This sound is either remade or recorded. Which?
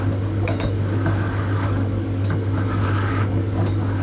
remade